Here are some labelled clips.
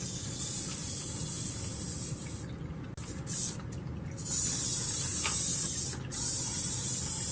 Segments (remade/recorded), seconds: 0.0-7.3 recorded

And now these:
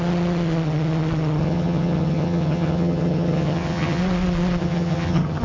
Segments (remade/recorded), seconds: 0.0-1.4 recorded; 1.4-4.0 remade; 4.0-4.6 recorded; 4.6-5.4 remade

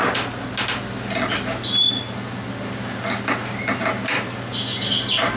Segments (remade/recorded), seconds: 0.0-5.4 recorded

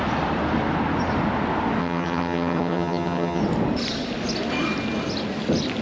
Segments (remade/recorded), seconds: 0.0-1.8 recorded; 1.8-3.4 remade; 3.4-5.8 recorded